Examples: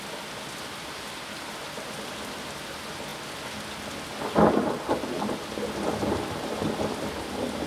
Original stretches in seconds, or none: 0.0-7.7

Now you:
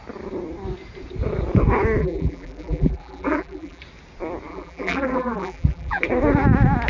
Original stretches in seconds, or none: 0.0-2.0; 3.8-4.5; 6.0-6.9

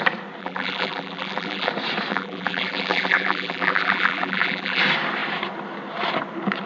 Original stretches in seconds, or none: 0.0-0.4; 1.7-2.1; 4.8-6.7

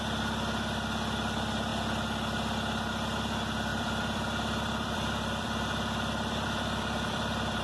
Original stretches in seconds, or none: 0.0-3.7